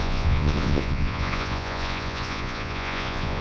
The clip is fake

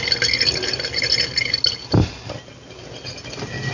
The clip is real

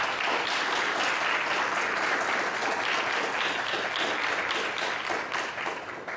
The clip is real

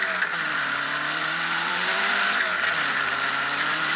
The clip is fake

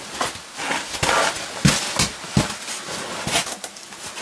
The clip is real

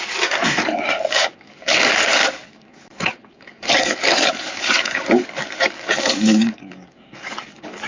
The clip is fake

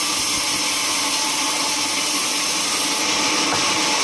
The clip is real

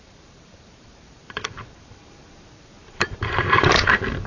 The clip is fake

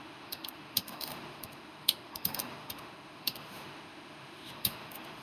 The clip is fake